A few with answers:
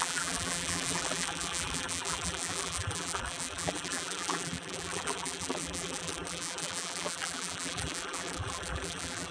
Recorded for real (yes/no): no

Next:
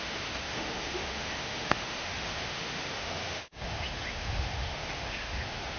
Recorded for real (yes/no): no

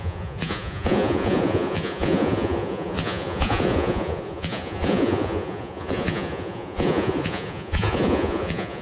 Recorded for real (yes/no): no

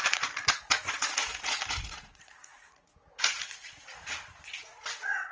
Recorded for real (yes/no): no